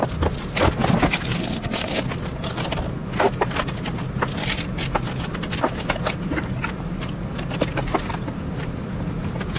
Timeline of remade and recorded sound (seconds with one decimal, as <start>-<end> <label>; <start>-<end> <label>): 0.0-1.4 recorded; 1.4-2.0 remade; 2.0-9.6 recorded